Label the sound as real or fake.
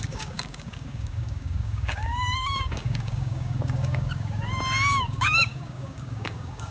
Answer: fake